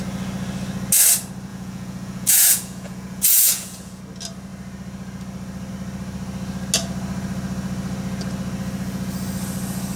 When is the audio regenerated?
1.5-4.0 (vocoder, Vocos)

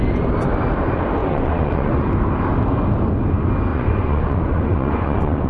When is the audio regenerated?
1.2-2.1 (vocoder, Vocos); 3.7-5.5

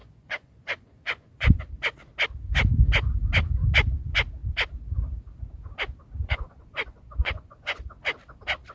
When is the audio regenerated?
0.0-1.6 (vocoder, Vocos); 6.2-7.8

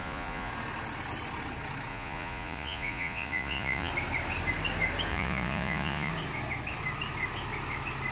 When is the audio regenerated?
0.0-0.5 (vocoder, Vocos); 1.9-3.9; 5.1-6.1